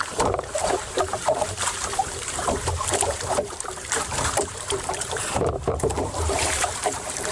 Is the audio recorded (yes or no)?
no